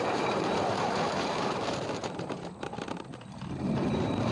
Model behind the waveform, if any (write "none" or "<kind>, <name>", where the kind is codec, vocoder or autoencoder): vocoder, BigVGAN v2